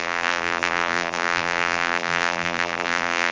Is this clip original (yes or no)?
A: no